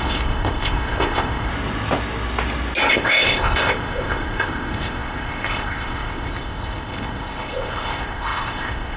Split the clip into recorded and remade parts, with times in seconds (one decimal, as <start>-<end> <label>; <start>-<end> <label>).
0.0-1.5 remade; 1.5-2.9 recorded; 2.9-9.0 remade